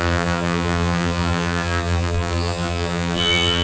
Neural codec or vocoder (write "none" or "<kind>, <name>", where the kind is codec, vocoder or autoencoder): vocoder, BigVGAN v2